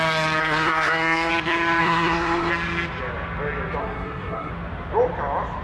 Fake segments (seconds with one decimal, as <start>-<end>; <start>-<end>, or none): 0.4-1.3; 1.8-2.5; 3.8-4.5